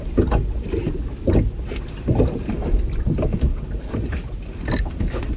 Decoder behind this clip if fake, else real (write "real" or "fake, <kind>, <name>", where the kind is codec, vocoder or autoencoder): real